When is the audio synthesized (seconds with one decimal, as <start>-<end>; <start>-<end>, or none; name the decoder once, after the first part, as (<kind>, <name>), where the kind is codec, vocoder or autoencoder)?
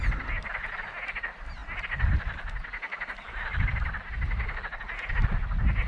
none